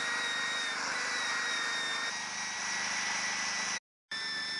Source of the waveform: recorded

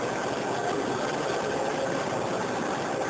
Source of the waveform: recorded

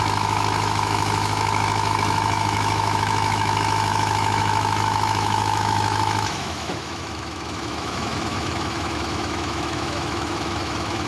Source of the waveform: remade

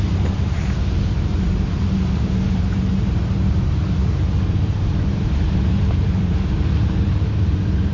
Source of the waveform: remade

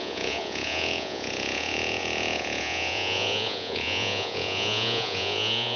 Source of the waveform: remade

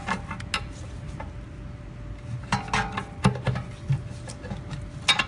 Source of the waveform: recorded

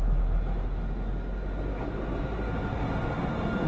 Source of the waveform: recorded